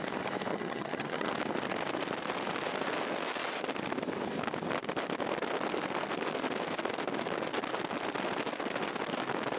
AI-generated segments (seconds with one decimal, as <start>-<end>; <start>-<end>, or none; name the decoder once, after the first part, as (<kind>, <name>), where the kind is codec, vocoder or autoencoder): 0.5-1.3 (vocoder, HiFi-GAN)

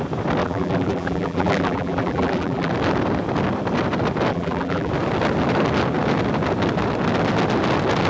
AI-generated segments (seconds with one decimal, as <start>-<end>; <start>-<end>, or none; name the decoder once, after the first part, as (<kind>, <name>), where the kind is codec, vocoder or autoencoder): 0.4-2.7 (vocoder, BigVGAN v2); 4.3-4.9

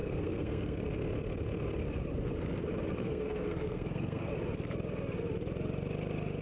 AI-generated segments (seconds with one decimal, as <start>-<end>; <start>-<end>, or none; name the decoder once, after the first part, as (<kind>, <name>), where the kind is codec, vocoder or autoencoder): 0.0-0.9 (codec, SNAC); 3.0-4.3

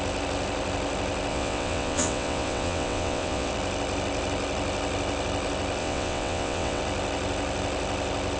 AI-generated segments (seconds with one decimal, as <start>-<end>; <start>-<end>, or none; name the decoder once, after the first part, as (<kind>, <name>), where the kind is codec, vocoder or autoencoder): 1.3-3.5 (vocoder, WaveNeXt); 5.8-6.8

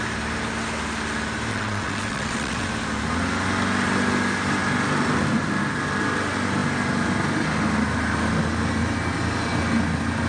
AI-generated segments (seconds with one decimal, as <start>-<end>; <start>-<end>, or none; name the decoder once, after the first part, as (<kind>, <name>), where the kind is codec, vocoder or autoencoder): 1.5-2.7 (vocoder, WaveNeXt)

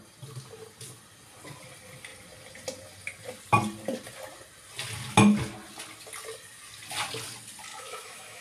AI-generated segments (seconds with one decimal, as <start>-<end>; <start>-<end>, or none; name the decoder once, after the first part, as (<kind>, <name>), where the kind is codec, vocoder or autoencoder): 7.7-8.4 (autoencoder, DAC-VAE)

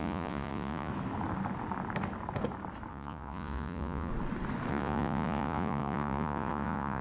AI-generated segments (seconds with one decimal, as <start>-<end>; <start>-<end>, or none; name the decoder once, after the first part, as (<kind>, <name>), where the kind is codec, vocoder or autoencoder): 0.0-0.9 (vocoder, Vocos); 2.9-4.1; 4.7-7.0